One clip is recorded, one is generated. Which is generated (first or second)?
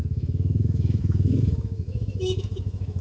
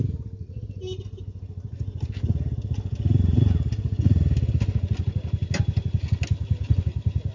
first